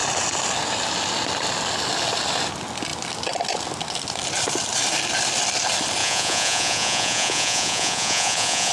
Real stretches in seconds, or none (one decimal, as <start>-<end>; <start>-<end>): 0.0-6.0